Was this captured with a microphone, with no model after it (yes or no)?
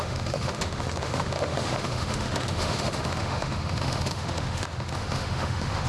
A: no